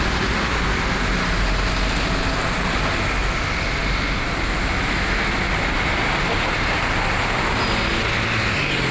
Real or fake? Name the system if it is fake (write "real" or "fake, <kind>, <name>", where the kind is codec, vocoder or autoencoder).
real